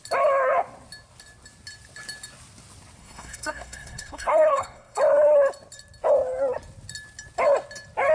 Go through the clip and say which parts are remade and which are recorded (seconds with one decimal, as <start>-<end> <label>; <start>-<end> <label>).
0.0-3.0 recorded; 3.0-5.0 remade; 5.0-8.1 recorded